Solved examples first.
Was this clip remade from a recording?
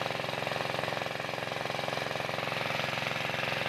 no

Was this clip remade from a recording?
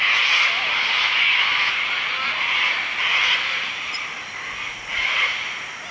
no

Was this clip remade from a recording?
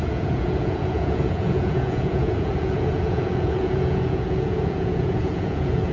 yes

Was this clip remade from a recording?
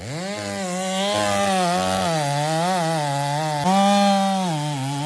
no